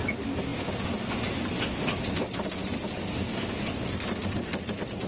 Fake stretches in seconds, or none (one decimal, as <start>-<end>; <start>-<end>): 4.2-5.1